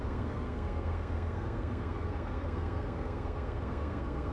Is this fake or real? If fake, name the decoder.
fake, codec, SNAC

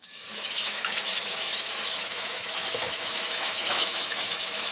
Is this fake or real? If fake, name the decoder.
fake, autoencoder, DAC-VAE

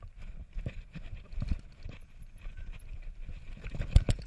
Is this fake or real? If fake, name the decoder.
real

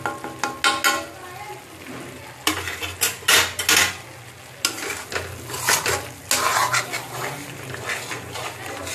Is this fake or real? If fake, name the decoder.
real